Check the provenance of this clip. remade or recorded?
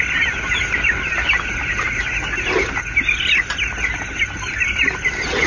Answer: recorded